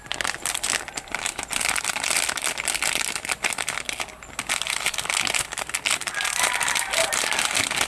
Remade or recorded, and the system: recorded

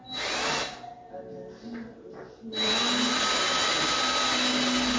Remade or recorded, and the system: recorded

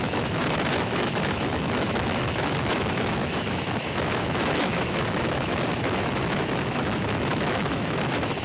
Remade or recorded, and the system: remade, autoencoder, DAC-VAE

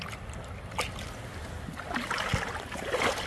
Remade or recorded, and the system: recorded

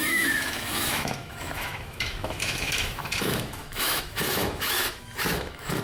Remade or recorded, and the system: remade, autoencoder, DAC-VAE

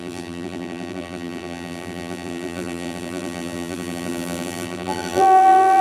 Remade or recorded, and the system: remade, vocoder, BigVGAN v2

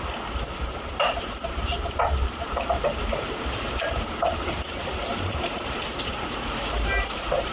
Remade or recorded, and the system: remade, vocoder, BigVGAN v2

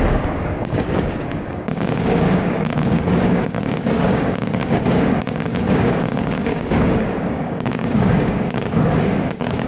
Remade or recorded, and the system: remade, codec, DAC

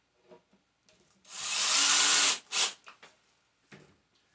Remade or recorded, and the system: recorded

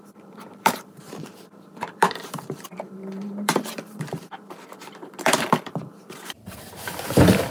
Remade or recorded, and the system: remade, vocoder, BigVGAN v2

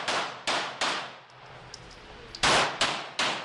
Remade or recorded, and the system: recorded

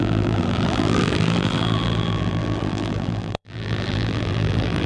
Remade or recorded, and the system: remade, vocoder, BigVGAN v2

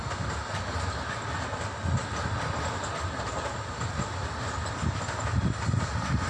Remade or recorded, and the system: recorded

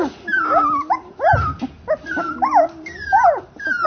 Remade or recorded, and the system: recorded